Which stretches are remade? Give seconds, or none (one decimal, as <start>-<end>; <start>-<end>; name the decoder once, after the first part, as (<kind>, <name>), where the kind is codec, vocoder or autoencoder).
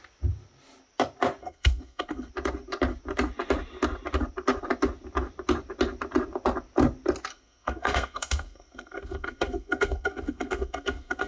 1.4-2.3 (codec, SNAC); 7.3-11.3